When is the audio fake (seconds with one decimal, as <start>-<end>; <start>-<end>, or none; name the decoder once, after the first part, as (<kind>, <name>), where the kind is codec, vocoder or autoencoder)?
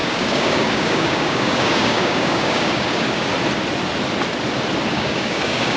0.0-3.3 (codec, DAC); 4.9-5.8